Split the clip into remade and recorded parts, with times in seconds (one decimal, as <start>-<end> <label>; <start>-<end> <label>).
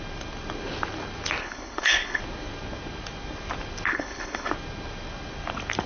0.0-1.4 recorded; 1.4-2.2 remade; 2.2-3.9 recorded; 3.9-4.5 remade; 4.5-5.9 recorded